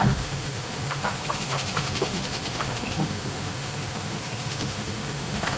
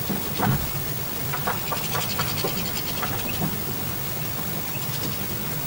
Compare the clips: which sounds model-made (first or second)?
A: first